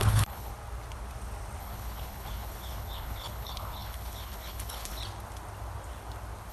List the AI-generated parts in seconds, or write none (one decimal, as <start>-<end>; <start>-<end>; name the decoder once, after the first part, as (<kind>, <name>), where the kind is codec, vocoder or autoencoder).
0.0-0.5 (codec, HILCodec); 1.6-5.0

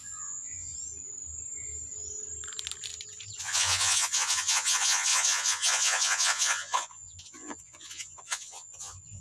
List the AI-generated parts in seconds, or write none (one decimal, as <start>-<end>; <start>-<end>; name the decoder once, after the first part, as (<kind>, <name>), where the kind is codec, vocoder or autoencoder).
0.0-0.7 (vocoder, Vocos); 3.4-9.2

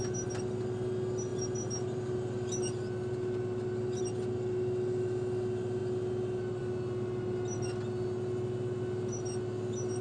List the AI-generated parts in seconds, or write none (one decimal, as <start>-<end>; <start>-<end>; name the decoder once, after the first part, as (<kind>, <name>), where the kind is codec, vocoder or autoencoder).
none

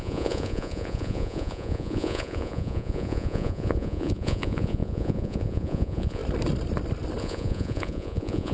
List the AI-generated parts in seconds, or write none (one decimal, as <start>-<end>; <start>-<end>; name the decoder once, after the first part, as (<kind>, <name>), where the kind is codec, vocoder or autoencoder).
0.0-6.2 (vocoder, Vocos); 7.2-8.5

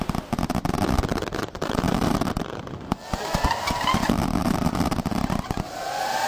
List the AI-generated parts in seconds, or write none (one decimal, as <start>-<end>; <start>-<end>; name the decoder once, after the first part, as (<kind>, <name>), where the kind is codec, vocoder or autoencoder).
1.1-3.5 (vocoder, BigVGAN v2); 4.4-5.4